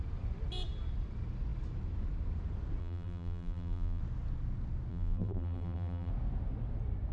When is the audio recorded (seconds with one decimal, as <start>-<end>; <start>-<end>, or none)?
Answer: 0.0-2.8; 4.0-4.9; 6.1-7.1